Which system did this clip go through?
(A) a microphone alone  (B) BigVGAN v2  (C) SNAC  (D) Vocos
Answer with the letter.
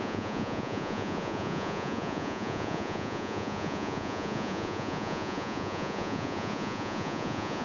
D